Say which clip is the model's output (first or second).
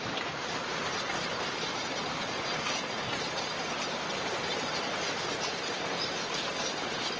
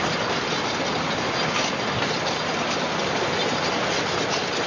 first